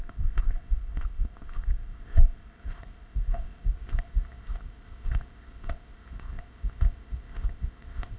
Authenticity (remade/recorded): remade